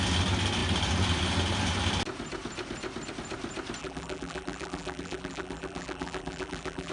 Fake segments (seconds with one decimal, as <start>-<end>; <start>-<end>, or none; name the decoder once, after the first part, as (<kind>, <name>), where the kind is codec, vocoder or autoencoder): 3.8-6.9 (vocoder, BigVGAN v2)